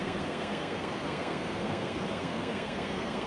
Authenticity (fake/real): fake